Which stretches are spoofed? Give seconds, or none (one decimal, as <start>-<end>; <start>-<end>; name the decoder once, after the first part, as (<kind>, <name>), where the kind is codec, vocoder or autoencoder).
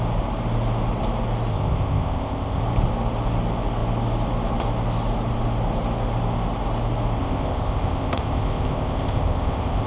1.5-2.6 (codec, ZipCodec); 7.2-9.9